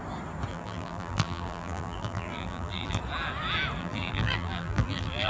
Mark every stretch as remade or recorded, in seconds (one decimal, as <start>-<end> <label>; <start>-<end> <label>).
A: 0.0-0.5 recorded; 0.5-3.0 remade; 3.0-3.8 recorded; 3.8-5.3 remade